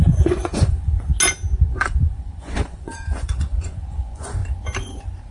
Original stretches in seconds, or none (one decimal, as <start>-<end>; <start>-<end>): 1.1-1.7; 4.4-5.3